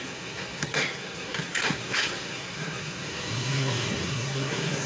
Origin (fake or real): fake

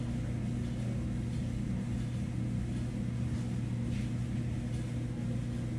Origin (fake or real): real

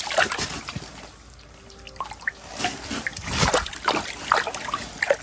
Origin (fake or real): real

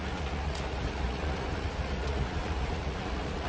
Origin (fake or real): fake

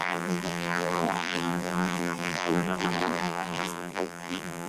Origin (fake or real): fake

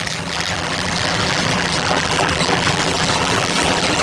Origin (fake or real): fake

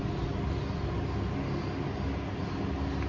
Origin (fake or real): real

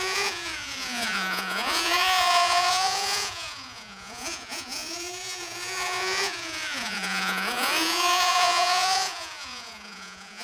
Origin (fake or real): fake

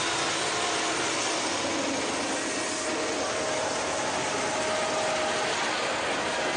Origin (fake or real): real